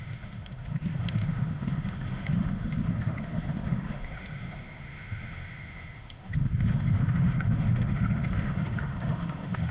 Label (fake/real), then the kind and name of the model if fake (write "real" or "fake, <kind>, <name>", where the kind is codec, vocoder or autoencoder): fake, autoencoder, DAC-VAE